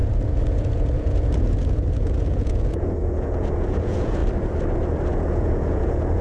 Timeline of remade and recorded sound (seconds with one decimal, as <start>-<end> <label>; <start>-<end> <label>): 0.0-4.2 remade; 4.2-5.1 recorded; 5.1-6.2 remade